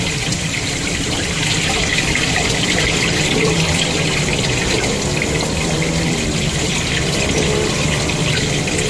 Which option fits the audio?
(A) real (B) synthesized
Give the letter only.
B